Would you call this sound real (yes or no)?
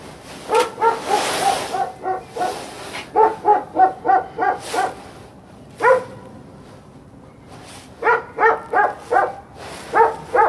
yes